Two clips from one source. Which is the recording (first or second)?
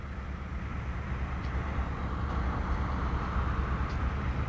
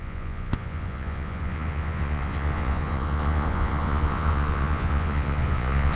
first